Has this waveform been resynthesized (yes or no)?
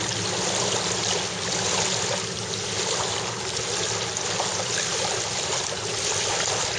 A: no